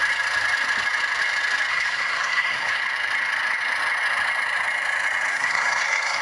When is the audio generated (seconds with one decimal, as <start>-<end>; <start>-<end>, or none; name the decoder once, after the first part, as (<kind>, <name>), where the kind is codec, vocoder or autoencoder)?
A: 1.7-2.8 (codec, SNAC); 5.3-6.2